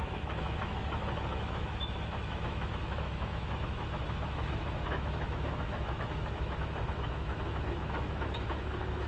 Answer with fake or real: fake